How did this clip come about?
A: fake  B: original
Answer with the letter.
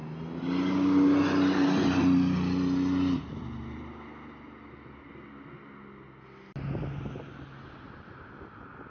B